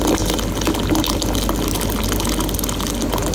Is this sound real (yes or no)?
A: yes